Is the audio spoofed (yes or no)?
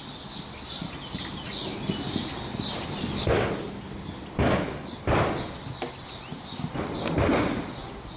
no